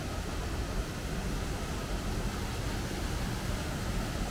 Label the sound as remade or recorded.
recorded